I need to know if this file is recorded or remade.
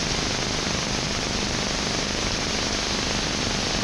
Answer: recorded